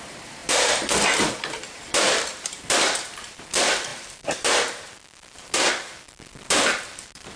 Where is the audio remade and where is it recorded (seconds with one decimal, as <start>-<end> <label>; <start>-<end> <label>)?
0.0-7.4 remade